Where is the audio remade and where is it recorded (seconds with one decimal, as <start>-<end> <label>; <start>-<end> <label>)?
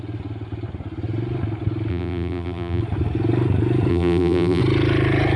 0.0-1.9 recorded; 1.9-2.8 remade; 2.8-3.9 recorded; 3.9-4.6 remade; 4.6-5.4 recorded